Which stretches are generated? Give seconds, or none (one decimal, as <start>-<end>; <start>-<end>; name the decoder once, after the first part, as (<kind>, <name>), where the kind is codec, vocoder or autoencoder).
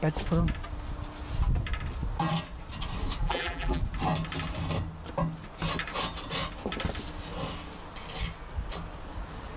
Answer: 3.2-3.8 (vocoder, BigVGAN v2)